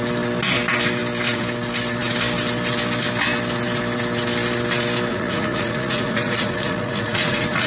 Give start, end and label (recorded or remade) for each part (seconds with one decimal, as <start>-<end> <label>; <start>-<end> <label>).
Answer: 0.0-5.1 recorded; 5.1-7.7 remade